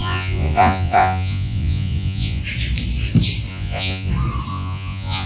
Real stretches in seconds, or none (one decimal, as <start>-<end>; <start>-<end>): 2.4-3.5; 4.1-4.5